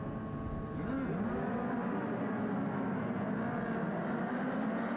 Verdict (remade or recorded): recorded